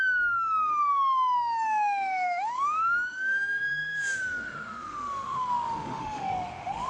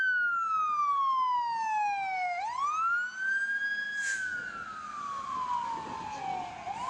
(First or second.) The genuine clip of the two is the second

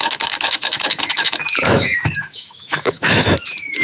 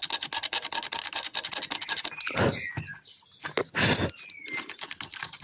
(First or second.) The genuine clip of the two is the second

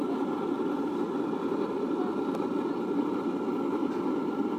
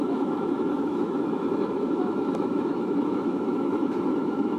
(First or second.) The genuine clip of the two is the first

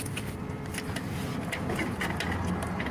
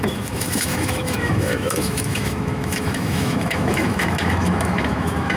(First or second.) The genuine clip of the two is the first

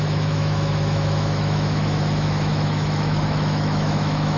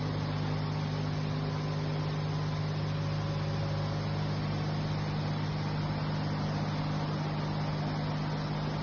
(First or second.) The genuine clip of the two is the second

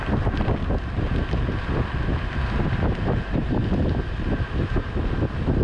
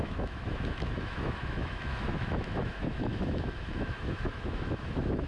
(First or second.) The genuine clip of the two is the first